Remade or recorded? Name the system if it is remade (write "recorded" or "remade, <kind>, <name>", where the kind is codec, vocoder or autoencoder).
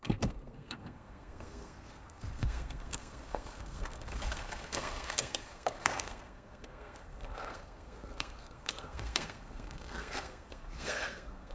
remade, codec, SNAC